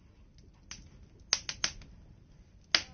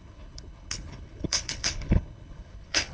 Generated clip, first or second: second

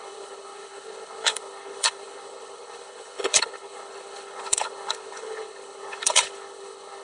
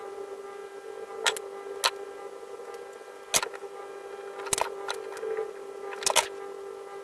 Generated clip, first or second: first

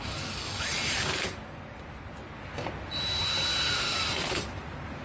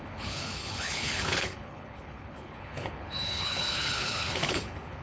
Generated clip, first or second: second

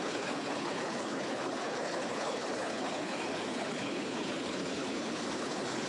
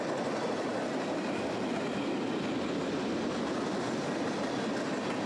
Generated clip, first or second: first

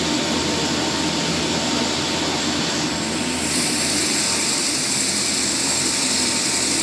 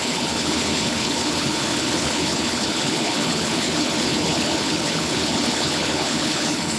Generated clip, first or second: second